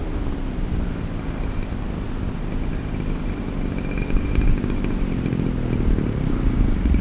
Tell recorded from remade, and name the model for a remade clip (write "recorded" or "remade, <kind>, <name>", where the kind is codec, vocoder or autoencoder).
recorded